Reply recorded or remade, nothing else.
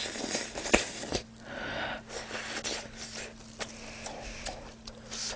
recorded